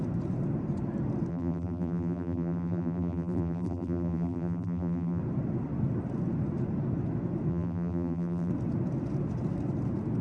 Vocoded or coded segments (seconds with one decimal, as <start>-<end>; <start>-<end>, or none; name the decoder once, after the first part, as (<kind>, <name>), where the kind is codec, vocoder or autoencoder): 1.3-5.2 (vocoder, BigVGAN v2); 7.5-8.5